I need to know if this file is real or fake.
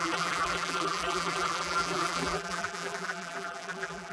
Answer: fake